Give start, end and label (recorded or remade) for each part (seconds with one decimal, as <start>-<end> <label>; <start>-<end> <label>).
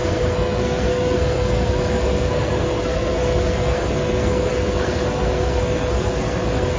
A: 0.0-6.8 remade